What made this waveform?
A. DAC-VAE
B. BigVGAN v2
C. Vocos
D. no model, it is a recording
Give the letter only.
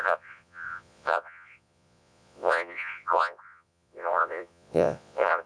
C